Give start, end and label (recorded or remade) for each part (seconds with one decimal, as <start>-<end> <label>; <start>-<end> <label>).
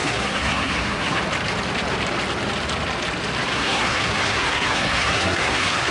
0.0-1.2 remade; 1.2-3.5 recorded; 3.5-5.9 remade